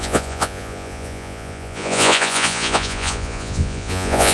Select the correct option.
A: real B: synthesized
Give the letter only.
B